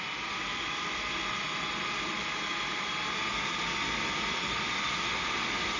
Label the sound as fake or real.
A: real